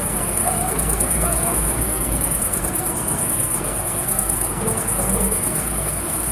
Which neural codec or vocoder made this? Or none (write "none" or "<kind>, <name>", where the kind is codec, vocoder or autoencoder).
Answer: codec, SNAC